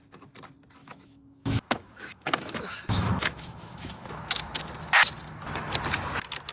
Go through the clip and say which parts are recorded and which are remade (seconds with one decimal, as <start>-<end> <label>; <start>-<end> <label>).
0.0-0.8 recorded; 0.8-4.7 remade; 4.7-6.5 recorded

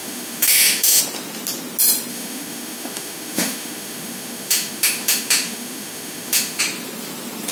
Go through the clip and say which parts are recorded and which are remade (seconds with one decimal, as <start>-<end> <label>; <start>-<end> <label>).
0.0-1.0 remade; 1.0-2.1 recorded; 2.1-6.6 remade; 6.6-7.5 recorded

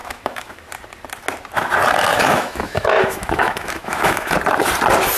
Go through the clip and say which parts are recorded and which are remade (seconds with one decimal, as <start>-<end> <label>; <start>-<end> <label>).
0.0-0.6 remade; 0.6-2.1 recorded; 2.1-4.3 remade; 4.3-5.2 recorded